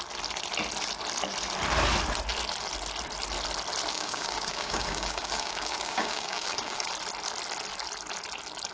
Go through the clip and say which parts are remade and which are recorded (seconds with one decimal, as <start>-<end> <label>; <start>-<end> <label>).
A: 0.0-3.9 recorded; 3.9-6.9 remade; 6.9-8.7 recorded